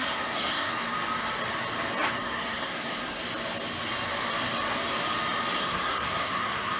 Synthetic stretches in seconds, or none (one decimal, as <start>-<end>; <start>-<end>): 0.0-0.7; 2.2-3.2; 5.6-6.8